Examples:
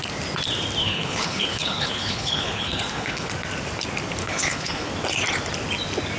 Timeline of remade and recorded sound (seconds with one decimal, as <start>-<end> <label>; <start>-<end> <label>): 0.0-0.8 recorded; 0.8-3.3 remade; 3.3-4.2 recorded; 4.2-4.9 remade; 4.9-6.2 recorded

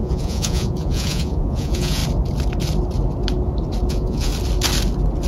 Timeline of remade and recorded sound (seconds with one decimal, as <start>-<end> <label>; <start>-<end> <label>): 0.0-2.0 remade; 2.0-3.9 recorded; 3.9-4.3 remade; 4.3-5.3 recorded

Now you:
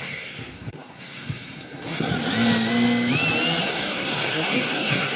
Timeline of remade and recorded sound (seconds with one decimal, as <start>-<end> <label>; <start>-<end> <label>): 0.0-2.1 remade; 2.1-3.6 recorded; 3.6-5.2 remade

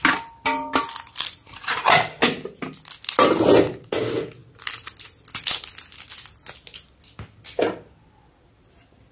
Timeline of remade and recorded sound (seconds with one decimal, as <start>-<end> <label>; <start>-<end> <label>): 0.0-9.1 recorded

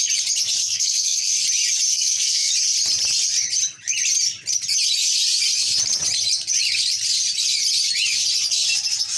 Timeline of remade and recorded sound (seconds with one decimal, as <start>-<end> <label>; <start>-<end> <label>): 0.0-0.6 recorded; 0.6-1.3 remade; 1.3-1.9 recorded; 1.9-2.5 remade; 2.5-9.2 recorded

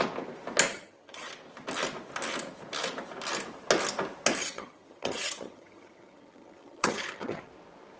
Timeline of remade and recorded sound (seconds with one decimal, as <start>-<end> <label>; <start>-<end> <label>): 0.0-0.7 recorded; 0.7-1.3 remade; 1.3-4.4 recorded; 4.4-7.5 remade; 7.5-8.0 recorded